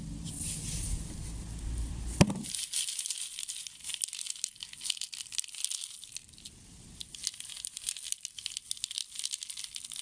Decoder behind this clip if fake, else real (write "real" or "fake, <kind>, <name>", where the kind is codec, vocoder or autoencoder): real